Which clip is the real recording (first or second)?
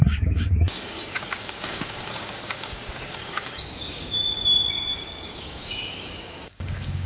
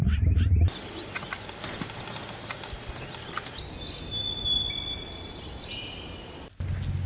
second